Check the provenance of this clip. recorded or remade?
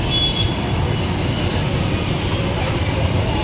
recorded